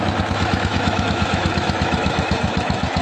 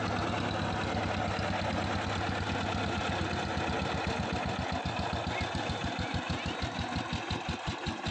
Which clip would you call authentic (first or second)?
second